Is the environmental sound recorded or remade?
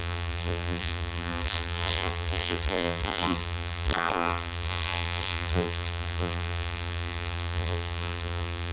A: remade